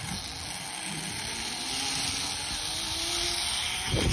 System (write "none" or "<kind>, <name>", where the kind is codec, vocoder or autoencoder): none